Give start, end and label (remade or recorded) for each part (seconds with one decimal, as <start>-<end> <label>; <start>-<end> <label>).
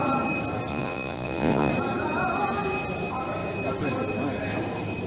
0.0-0.7 recorded; 0.7-1.7 remade; 1.7-5.1 recorded